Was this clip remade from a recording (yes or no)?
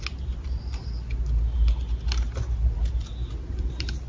no